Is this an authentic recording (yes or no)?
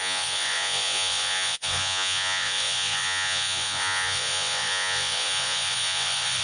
no